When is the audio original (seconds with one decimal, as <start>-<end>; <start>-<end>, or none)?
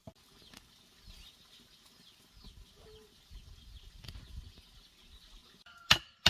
0.0-6.3